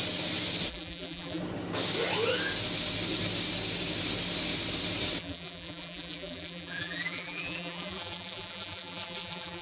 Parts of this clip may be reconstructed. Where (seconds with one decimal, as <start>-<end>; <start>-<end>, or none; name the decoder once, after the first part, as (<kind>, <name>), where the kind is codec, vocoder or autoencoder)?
0.7-1.4 (vocoder, BigVGAN v2); 5.2-9.6